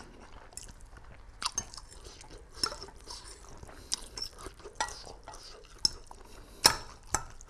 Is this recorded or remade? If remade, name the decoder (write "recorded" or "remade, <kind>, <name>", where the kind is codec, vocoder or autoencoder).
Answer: recorded